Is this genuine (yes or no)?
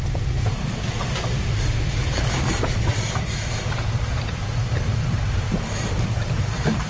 no